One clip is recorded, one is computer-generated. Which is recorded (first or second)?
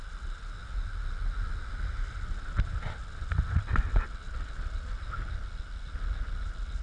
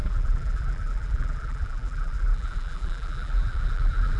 first